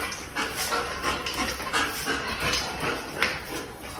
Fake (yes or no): no